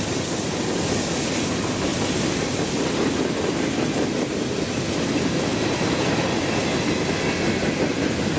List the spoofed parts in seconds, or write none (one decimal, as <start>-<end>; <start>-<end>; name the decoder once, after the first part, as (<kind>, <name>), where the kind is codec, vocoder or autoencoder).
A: none